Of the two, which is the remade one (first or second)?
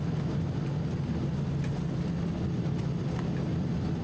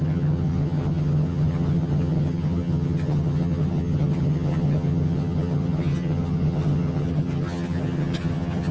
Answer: second